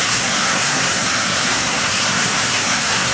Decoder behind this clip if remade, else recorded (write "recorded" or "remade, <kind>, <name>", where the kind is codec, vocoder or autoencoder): remade, codec, SNAC